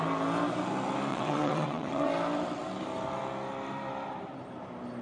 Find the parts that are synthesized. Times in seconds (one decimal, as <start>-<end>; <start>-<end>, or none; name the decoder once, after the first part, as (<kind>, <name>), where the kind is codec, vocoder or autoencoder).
1.1-2.1 (vocoder, WaveNeXt)